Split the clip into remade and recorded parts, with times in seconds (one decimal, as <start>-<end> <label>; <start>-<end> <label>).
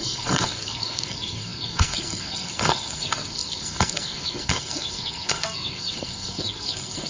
0.0-7.1 remade